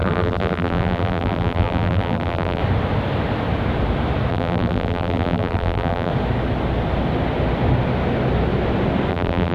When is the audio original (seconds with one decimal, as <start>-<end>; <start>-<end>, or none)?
2.6-4.3; 6.1-9.1